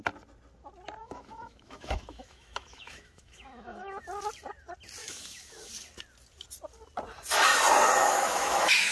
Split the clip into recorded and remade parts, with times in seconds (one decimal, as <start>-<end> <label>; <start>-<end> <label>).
0.0-1.0 recorded; 1.0-4.0 remade; 4.0-5.0 recorded; 5.0-5.7 remade; 5.7-8.0 recorded; 8.0-8.9 remade